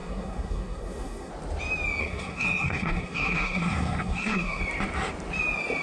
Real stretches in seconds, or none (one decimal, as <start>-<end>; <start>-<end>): 1.3-2.0; 4.6-5.8